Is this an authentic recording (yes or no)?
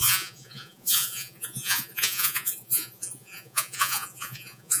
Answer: no